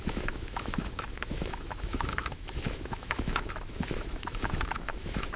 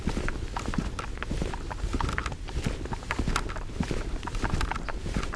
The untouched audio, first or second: second